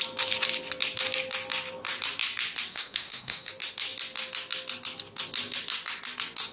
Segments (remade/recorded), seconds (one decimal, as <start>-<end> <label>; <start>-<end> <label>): 0.0-2.7 recorded; 2.7-3.5 remade; 3.5-6.5 recorded